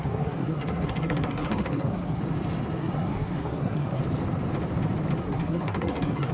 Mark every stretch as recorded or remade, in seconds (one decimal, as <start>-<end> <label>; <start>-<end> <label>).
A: 0.0-2.2 remade; 2.2-2.8 recorded; 2.8-4.0 remade; 4.0-5.2 recorded; 5.2-6.3 remade